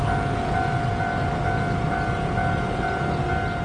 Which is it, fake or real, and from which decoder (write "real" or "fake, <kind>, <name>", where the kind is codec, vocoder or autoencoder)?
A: real